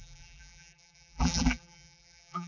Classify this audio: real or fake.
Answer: fake